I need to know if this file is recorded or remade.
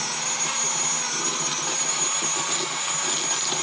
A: recorded